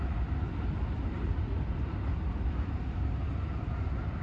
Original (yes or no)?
yes